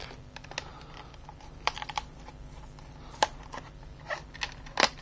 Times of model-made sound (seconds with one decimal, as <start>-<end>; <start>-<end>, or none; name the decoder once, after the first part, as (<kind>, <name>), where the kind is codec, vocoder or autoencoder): 0.7-3.1 (vocoder, BigVGAN v2)